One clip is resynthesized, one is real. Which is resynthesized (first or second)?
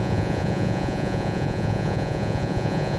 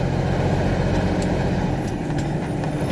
first